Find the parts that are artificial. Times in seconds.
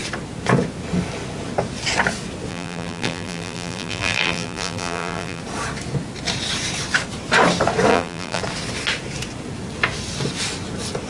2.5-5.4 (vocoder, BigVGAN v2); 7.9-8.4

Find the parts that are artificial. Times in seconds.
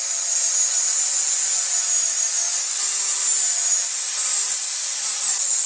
2.3-3.0 (vocoder, BigVGAN v2)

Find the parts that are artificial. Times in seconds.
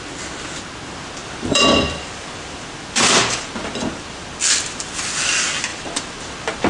1.2-5.0 (vocoder, BigVGAN v2); 5.7-6.7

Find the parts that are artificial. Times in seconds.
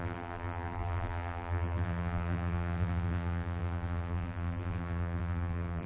0.0-5.9 (vocoder, BigVGAN v2)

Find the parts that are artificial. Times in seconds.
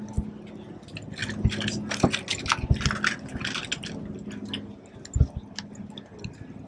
none